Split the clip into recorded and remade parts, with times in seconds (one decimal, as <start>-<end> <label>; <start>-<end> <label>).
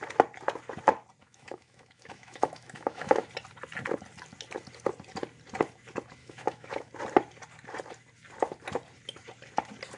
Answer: 0.0-1.2 recorded; 1.2-3.3 remade; 3.3-6.2 recorded; 6.2-6.9 remade; 6.9-10.0 recorded